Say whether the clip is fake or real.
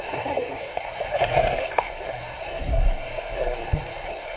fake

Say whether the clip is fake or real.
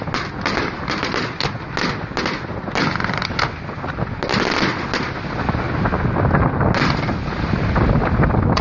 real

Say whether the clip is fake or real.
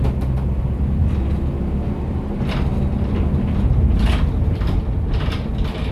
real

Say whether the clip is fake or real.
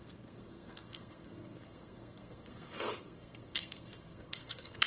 fake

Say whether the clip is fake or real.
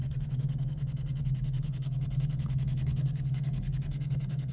fake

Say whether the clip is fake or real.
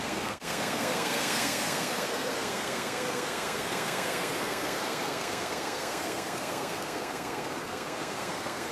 fake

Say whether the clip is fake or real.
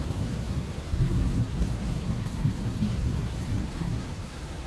fake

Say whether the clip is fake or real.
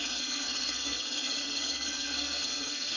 fake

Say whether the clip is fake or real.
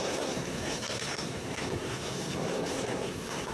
fake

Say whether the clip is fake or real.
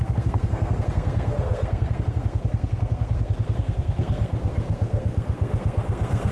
fake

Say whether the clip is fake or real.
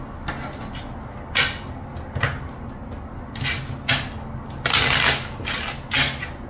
real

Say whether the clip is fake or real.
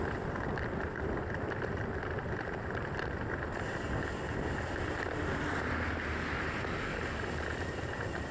real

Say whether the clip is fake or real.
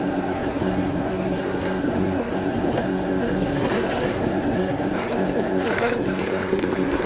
fake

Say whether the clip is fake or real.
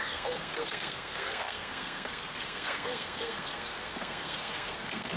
fake